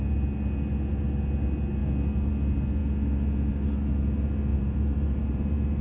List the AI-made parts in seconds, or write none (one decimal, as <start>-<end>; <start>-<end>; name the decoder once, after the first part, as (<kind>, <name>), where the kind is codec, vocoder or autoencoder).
4.5-5.8 (vocoder, BigVGAN v2)